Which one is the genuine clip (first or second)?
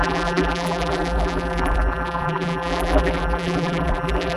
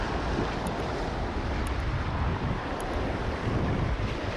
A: second